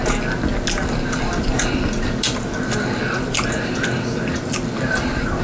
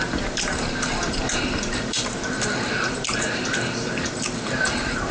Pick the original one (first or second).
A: first